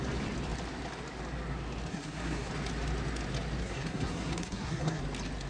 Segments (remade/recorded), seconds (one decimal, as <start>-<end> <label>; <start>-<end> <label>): 0.0-1.9 recorded; 1.9-2.5 remade; 2.5-3.6 recorded; 3.6-5.0 remade; 5.0-5.5 recorded